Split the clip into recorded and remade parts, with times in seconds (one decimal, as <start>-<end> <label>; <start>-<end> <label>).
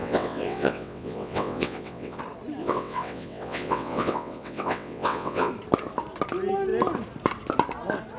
0.0-2.2 remade; 2.2-2.6 recorded; 2.6-5.5 remade; 5.5-8.2 recorded